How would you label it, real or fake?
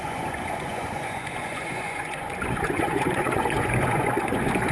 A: fake